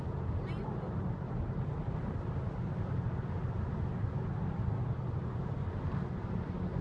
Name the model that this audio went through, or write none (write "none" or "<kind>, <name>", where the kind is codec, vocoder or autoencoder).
none